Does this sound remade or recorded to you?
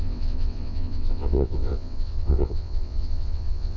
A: remade